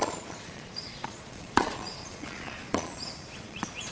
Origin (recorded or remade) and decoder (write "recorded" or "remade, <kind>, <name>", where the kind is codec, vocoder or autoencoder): remade, vocoder, Vocos